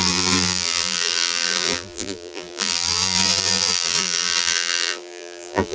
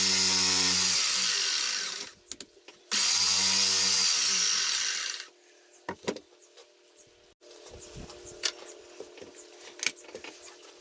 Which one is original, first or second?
second